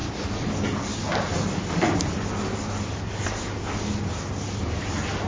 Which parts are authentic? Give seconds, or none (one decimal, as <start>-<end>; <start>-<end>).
0.0-5.3